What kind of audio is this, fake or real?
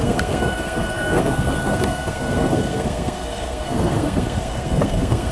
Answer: fake